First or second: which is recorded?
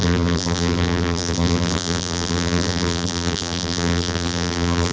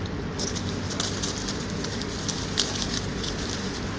second